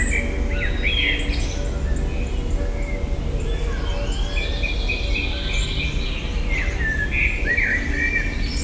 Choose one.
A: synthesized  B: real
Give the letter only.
B